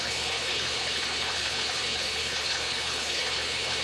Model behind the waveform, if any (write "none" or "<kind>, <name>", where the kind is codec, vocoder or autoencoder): codec, HILCodec